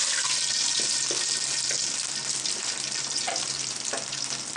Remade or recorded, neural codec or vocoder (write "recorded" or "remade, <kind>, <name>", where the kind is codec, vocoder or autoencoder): recorded